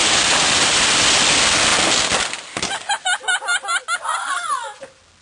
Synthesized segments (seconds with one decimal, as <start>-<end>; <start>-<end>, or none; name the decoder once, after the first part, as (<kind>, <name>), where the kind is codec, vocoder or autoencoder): 0.0-1.0 (vocoder, BigVGAN v2)